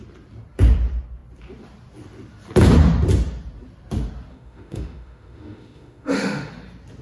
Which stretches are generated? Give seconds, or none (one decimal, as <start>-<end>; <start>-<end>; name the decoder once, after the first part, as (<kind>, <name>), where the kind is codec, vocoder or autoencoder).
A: 4.3-6.5 (autoencoder, DAC-VAE)

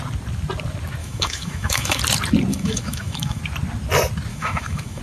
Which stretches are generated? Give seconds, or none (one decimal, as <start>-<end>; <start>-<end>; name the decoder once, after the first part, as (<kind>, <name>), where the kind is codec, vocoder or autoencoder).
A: 1.0-2.0 (autoencoder, DAC-VAE); 2.5-3.4; 4.3-5.0

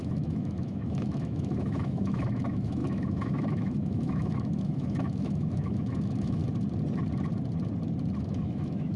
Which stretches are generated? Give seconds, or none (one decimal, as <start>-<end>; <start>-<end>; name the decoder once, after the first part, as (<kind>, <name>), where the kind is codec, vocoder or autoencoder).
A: 0.0-6.4 (autoencoder, DAC-VAE); 8.2-9.0

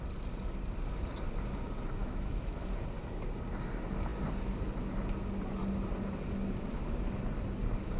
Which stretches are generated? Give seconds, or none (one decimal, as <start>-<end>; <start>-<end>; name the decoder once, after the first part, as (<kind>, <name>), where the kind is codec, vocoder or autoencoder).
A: 2.0-2.7 (autoencoder, DAC-VAE)

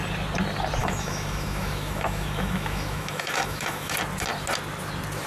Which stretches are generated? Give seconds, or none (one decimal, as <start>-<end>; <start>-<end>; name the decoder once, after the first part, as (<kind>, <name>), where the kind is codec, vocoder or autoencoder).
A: 0.8-4.0 (autoencoder, DAC-VAE)

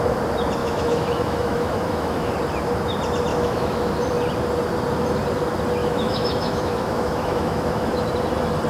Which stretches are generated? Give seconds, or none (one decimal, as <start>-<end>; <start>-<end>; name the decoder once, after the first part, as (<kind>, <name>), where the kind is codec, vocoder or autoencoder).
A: 0.6-2.3 (autoencoder, DAC-VAE); 3.3-3.9; 5.8-8.1

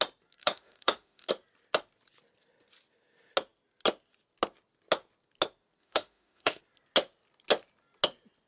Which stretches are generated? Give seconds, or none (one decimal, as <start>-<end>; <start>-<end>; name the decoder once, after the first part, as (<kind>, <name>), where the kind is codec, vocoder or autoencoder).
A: 0.4-1.3 (autoencoder, DAC-VAE); 5.8-6.6

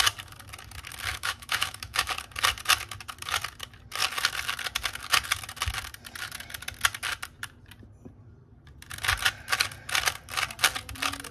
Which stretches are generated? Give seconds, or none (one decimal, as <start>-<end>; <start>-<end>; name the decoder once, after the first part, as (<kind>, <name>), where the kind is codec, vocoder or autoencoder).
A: 1.1-2.1 (autoencoder, DAC-VAE)